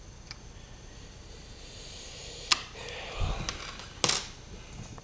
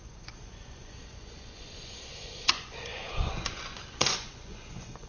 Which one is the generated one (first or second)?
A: second